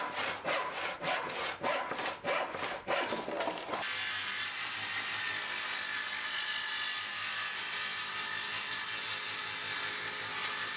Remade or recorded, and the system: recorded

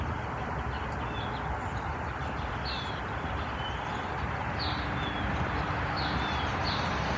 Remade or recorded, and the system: recorded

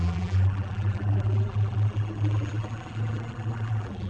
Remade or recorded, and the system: remade, vocoder, BigVGAN v2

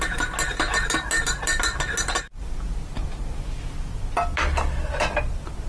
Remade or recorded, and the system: recorded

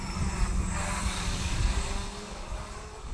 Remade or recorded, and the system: remade, codec, DAC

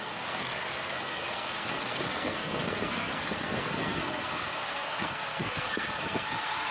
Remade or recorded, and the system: remade, codec, SNAC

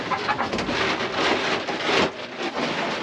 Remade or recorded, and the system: recorded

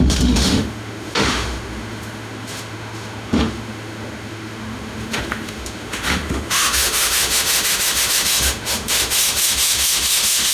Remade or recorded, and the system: remade, autoencoder, DAC-VAE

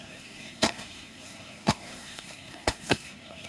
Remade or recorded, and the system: remade, codec, SNAC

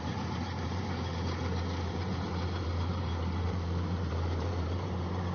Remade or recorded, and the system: remade, vocoder, BigVGAN v2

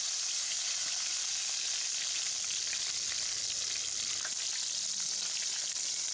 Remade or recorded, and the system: recorded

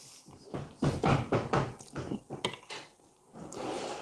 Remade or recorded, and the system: recorded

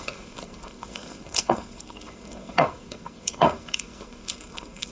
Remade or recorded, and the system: remade, codec, SNAC